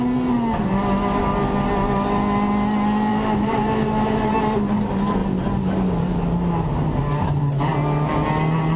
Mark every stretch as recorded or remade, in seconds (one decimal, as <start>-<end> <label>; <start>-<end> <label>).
0.0-3.1 recorded; 3.1-4.3 remade; 4.3-8.8 recorded